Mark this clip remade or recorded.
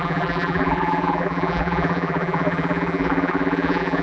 remade